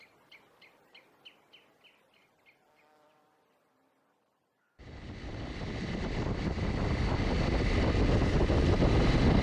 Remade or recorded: recorded